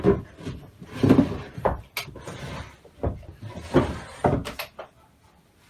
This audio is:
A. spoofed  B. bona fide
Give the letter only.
B